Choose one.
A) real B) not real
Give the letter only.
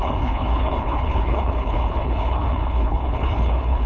B